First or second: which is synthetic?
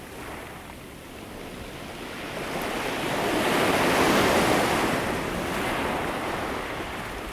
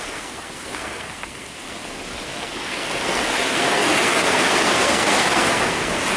second